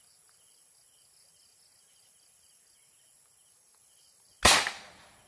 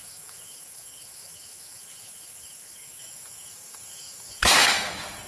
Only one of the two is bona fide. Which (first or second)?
first